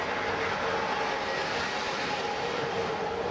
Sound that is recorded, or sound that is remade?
recorded